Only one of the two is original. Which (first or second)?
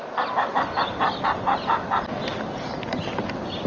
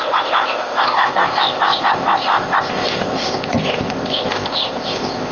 first